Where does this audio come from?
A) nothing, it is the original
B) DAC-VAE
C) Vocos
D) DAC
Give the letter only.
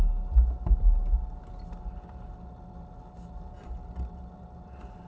A